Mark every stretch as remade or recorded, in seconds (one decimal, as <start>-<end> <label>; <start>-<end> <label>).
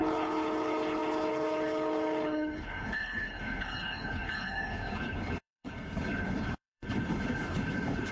0.0-8.1 remade